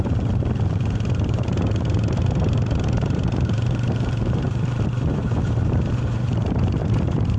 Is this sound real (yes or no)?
no